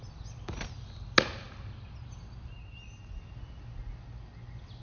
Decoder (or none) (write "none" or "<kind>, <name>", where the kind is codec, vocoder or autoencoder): none